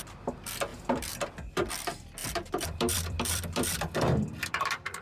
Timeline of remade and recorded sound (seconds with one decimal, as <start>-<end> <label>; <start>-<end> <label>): 0.0-0.7 recorded; 0.7-1.7 remade; 1.7-2.2 recorded; 2.2-5.0 remade